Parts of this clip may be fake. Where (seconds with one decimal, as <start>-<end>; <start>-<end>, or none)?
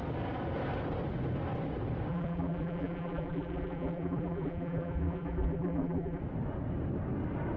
2.1-6.2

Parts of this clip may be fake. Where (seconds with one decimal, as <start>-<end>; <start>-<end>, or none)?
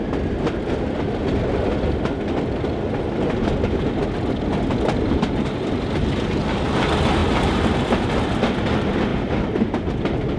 7.2-8.1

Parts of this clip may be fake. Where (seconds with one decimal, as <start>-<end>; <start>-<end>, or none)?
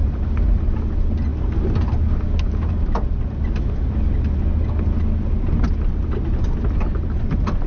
0.0-0.6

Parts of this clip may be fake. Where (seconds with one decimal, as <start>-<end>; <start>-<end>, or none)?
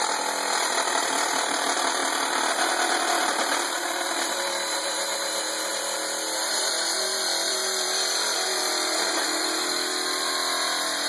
0.0-2.0; 3.1-5.1; 5.7-11.1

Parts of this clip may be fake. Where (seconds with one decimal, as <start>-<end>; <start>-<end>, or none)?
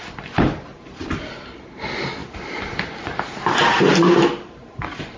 0.0-1.0; 2.2-3.9